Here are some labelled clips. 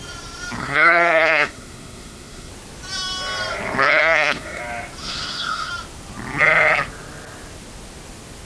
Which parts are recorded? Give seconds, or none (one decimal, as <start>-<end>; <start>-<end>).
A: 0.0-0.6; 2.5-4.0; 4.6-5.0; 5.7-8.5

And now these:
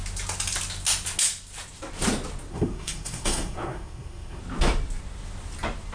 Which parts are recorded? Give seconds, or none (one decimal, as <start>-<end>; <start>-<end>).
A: 0.0-2.5; 4.4-5.9

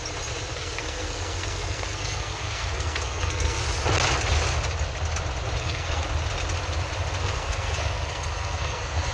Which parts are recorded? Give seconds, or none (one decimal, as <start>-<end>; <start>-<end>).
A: 0.0-0.5; 3.6-5.6; 6.0-7.2

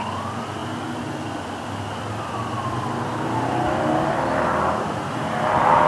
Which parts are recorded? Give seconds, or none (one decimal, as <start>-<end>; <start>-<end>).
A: 0.0-5.9

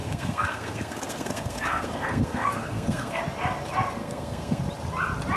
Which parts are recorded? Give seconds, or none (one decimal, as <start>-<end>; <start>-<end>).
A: 3.2-4.0; 4.6-5.4